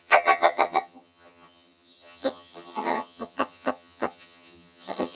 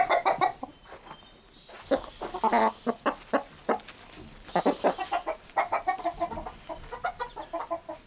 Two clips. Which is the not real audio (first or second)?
first